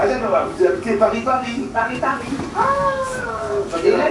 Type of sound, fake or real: fake